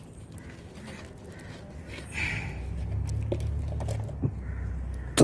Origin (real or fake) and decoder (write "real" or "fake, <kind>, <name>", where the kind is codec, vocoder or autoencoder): real